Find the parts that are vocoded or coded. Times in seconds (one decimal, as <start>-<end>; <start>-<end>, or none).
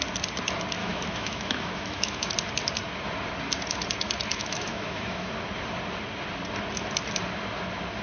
0.8-2.3; 4.3-5.3